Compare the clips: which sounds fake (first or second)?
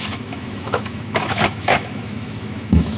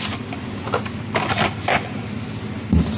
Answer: first